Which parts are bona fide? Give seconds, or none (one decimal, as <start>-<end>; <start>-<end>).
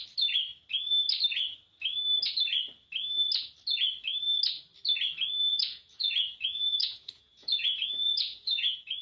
0.0-5.5